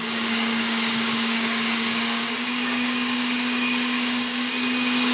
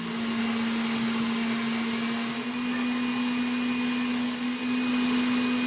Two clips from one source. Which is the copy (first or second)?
first